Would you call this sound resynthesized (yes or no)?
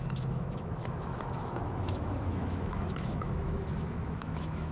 yes